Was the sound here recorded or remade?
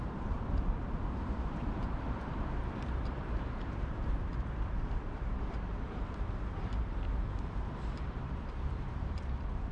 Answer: remade